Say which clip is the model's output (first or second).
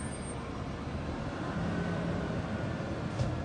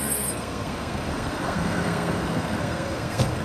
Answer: second